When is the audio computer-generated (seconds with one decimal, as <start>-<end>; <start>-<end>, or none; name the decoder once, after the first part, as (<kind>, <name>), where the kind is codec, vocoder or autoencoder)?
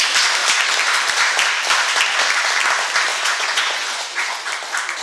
3.1-4.5 (vocoder, Vocos)